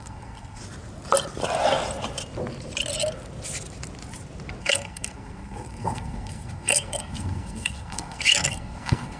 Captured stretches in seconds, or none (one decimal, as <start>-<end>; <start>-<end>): 0.6-4.6